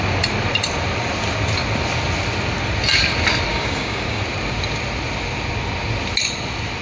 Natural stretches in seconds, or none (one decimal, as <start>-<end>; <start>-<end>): 0.0-3.5; 4.2-6.8